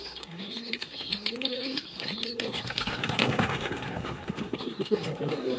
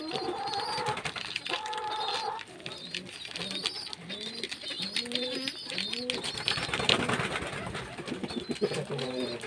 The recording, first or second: second